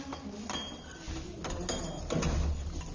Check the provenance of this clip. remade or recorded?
recorded